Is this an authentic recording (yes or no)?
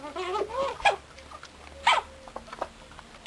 yes